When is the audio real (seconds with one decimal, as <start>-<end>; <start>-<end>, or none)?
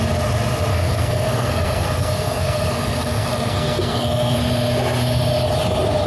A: 0.0-0.7; 4.4-6.1